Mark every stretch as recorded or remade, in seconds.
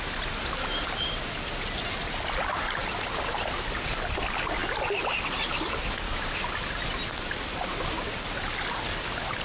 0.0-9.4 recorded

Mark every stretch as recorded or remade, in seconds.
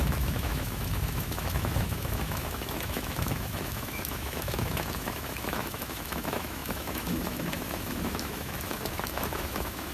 0.0-9.9 remade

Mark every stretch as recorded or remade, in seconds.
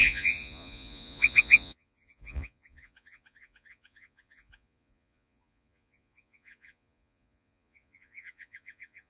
0.0-9.1 remade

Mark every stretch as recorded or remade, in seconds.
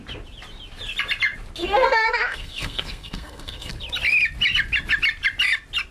0.0-1.6 recorded; 1.6-3.7 remade; 3.7-5.9 recorded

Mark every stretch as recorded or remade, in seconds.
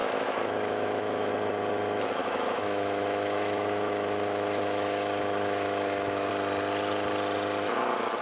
0.0-1.3 remade; 1.3-2.2 recorded; 2.2-6.3 remade; 6.3-8.2 recorded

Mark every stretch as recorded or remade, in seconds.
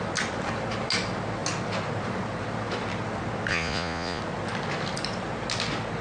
0.0-3.5 recorded; 3.5-4.2 remade; 4.2-6.0 recorded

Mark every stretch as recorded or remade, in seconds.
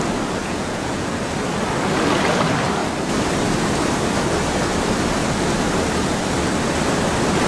0.0-0.4 recorded; 0.4-1.2 remade; 1.2-7.5 recorded